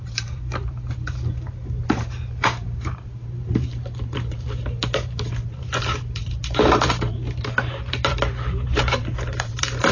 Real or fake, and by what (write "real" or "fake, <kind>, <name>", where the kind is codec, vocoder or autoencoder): fake, vocoder, BigVGAN v2